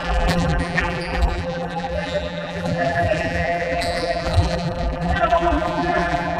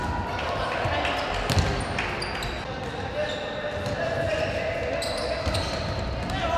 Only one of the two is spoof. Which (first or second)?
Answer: first